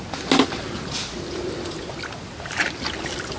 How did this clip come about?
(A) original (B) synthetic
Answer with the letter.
A